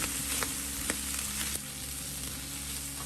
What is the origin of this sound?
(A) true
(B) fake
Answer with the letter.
A